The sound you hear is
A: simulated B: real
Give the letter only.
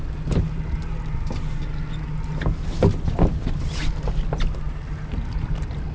B